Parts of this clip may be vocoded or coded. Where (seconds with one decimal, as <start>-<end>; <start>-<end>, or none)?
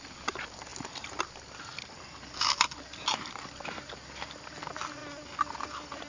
none